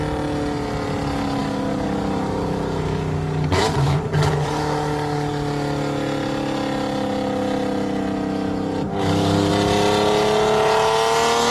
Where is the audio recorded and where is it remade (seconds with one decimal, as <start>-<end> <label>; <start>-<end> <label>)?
0.0-1.4 recorded; 1.4-5.3 remade; 5.3-8.9 recorded; 8.9-9.5 remade; 9.5-11.5 recorded